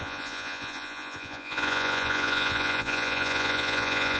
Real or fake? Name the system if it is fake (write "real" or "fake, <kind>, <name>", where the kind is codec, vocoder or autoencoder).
fake, vocoder, Vocos